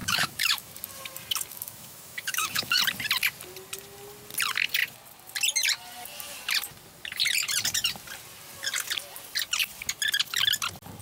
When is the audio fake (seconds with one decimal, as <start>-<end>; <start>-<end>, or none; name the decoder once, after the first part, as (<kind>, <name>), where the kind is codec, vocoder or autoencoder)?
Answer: 0.0-0.7 (autoencoder, DAC-VAE); 1.5-2.8

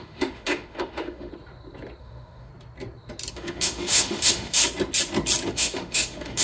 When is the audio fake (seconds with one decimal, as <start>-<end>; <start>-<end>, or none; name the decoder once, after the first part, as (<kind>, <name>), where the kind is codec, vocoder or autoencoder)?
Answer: 0.0-1.3 (autoencoder, DAC-VAE); 2.0-2.5; 3.3-4.6; 5.5-6.4